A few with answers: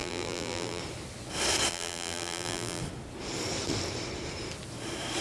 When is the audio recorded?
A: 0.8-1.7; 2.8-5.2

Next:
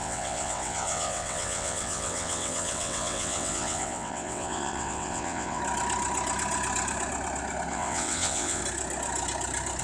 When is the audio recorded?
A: 5.6-7.7; 8.6-9.8

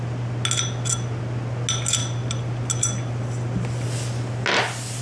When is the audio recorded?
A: 0.0-5.0

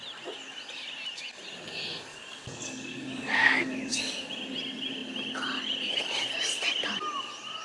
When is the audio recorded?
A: 0.0-2.1; 4.3-7.6

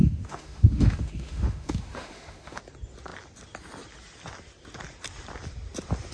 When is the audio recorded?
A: 2.6-6.1

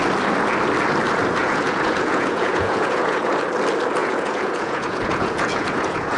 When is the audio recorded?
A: 0.0-1.4; 3.3-4.0